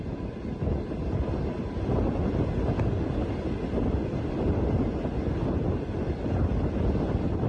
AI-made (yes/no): no